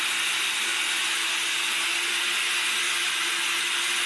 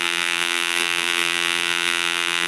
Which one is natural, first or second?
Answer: first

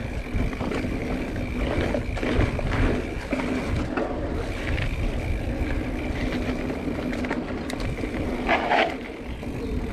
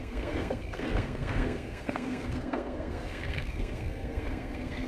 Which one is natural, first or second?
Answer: first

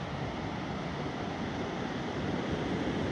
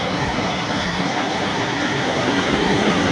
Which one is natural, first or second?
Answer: first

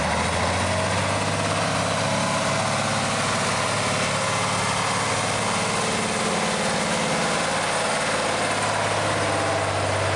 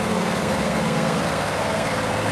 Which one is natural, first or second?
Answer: first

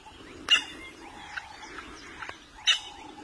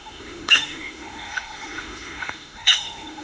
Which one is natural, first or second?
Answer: first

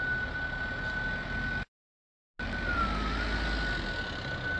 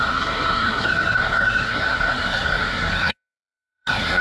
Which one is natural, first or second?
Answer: first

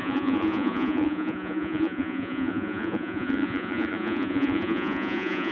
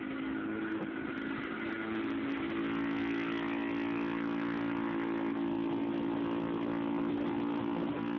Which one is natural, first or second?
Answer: second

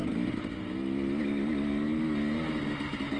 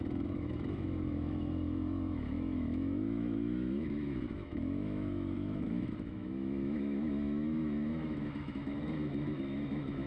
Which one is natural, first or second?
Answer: first